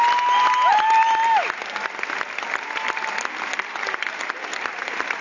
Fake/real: real